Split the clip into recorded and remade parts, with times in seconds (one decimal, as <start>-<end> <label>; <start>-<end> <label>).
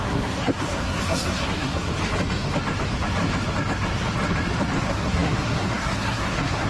0.0-1.9 remade; 1.9-4.8 recorded; 4.8-6.7 remade